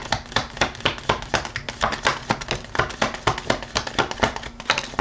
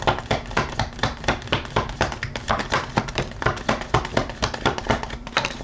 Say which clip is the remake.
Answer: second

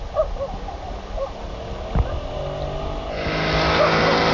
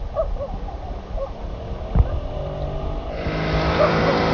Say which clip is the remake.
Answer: second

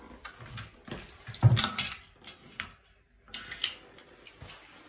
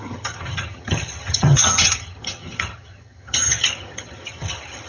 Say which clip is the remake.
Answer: second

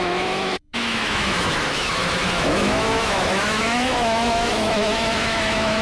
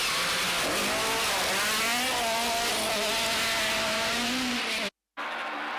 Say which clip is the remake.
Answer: first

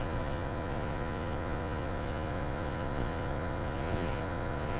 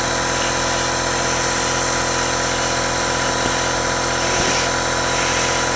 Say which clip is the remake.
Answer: first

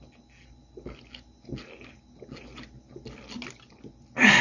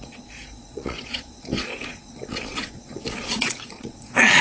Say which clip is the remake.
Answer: second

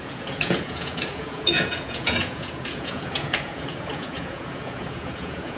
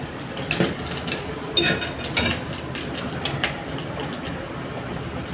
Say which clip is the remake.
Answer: first